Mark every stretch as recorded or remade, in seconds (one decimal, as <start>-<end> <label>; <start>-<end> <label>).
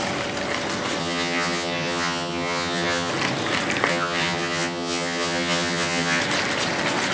0.0-1.0 recorded; 1.0-3.1 remade; 3.1-3.9 recorded; 3.9-6.2 remade; 6.2-7.1 recorded